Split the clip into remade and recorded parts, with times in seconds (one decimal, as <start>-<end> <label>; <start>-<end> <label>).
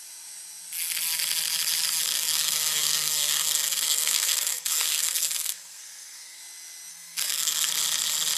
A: 0.0-2.1 recorded; 2.1-6.4 remade; 6.4-6.9 recorded; 6.9-7.7 remade; 7.7-8.4 recorded